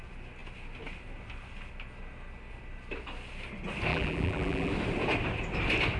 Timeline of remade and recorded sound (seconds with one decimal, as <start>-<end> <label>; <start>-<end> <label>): 0.0-3.9 recorded; 3.9-4.7 remade; 4.7-6.0 recorded